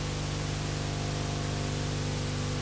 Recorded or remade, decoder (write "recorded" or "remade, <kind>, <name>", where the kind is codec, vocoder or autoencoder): recorded